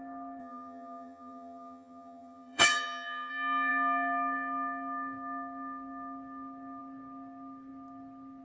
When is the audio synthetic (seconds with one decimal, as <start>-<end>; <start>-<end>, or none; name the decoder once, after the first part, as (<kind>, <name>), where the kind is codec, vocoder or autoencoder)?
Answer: 0.4-3.3 (vocoder, HiFi-GAN)